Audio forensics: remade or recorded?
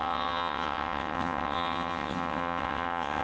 remade